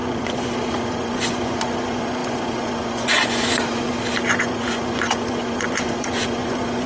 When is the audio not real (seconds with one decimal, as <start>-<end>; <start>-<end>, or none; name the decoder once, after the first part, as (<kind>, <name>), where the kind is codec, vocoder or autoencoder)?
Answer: 0.0-3.9 (vocoder, Vocos); 4.4-6.9